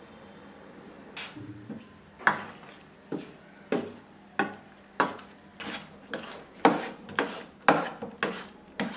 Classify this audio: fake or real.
real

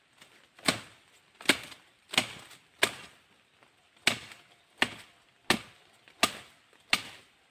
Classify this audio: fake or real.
real